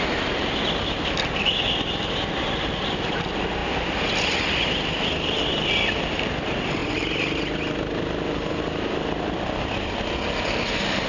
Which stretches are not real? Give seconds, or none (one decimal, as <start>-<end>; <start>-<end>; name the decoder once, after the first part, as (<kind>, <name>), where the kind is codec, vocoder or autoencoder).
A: none